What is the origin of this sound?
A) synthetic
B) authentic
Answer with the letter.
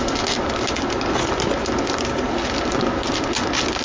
B